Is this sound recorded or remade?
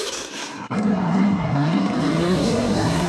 remade